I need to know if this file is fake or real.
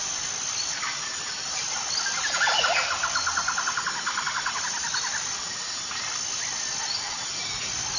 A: real